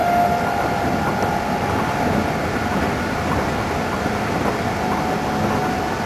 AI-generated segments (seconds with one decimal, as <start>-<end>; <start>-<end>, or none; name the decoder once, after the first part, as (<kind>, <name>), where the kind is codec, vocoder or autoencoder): none